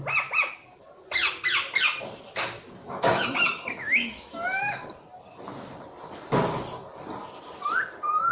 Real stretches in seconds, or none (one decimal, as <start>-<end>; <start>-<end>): 0.0-2.8; 4.9-8.3